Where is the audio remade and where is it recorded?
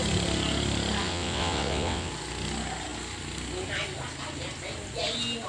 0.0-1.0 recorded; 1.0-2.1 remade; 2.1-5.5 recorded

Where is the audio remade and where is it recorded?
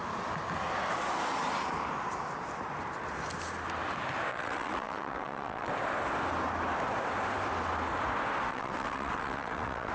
0.0-4.3 recorded; 4.3-5.7 remade; 5.7-8.5 recorded; 8.5-9.9 remade